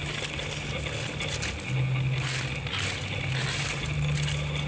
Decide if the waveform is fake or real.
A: real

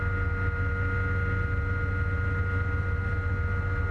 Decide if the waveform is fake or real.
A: real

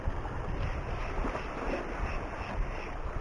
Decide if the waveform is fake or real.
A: real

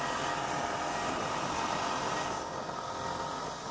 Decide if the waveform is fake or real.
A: real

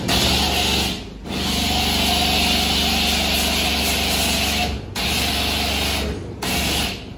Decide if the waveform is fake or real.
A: real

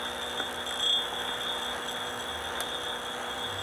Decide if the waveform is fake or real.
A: real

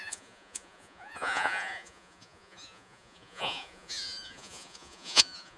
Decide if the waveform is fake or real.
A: fake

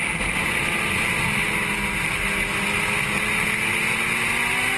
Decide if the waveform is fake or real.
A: real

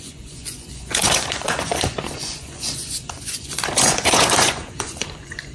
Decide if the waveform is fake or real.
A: fake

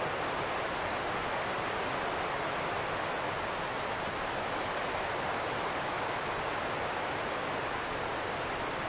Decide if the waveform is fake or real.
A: real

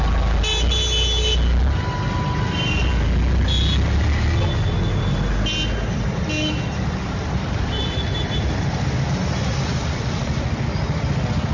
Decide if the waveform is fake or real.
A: real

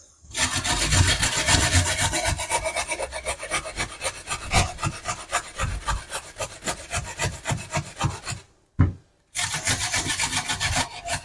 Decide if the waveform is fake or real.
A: real